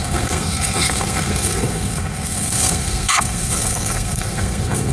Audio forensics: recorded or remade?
remade